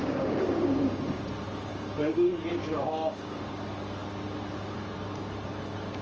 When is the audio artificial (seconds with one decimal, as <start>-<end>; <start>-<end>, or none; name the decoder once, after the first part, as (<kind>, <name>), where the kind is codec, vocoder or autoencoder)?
0.0-1.2 (codec, DAC); 1.7-3.4